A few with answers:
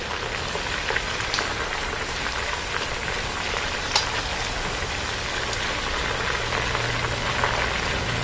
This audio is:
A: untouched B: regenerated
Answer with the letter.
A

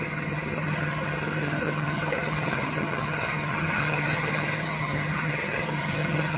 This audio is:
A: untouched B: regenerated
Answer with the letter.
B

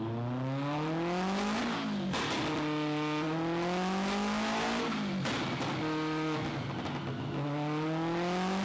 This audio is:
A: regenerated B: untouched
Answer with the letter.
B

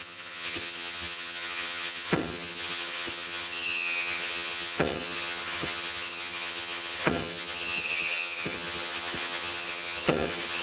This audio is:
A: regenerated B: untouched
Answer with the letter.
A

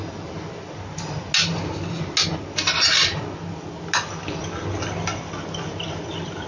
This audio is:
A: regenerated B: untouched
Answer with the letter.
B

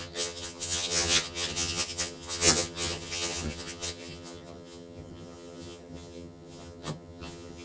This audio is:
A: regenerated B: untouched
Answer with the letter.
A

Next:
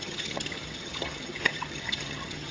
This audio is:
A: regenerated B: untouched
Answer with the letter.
A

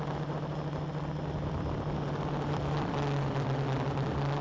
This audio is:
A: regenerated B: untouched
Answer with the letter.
B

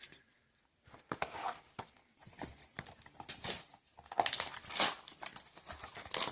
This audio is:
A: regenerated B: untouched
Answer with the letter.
B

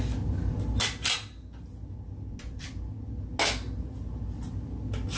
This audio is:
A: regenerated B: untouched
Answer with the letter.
B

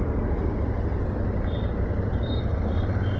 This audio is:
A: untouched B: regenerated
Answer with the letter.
A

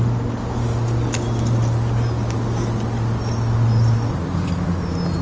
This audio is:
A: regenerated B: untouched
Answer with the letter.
B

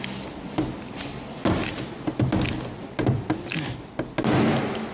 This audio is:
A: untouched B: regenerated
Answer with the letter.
A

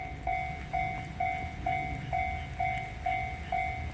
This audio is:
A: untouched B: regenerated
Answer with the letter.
A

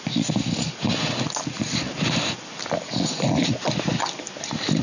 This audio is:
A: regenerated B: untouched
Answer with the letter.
B